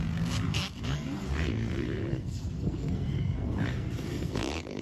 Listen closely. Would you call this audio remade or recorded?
remade